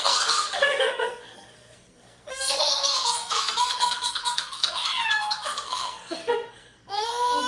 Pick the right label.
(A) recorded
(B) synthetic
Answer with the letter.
B